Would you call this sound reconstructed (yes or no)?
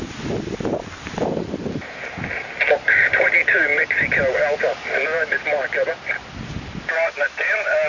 no